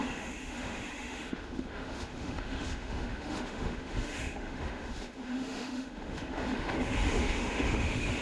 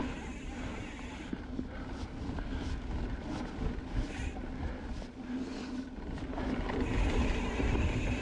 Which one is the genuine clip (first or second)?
second